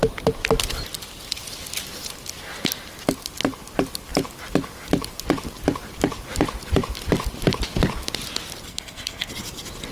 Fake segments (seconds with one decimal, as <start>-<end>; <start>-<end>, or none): 8.7-9.3